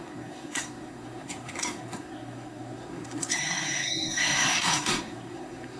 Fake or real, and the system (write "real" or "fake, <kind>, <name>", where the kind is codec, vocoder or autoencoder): fake, codec, SNAC